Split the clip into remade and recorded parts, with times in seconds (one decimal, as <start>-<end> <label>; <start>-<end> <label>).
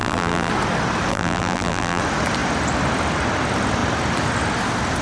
0.0-0.5 remade; 0.5-1.1 recorded; 1.1-2.0 remade; 2.0-5.0 recorded